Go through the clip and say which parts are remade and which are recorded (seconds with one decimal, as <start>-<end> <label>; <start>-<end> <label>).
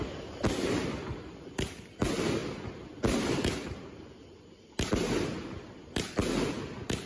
0.0-7.1 recorded